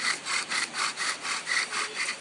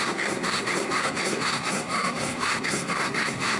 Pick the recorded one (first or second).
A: first